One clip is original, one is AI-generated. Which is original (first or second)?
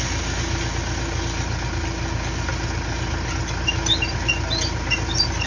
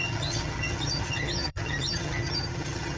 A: first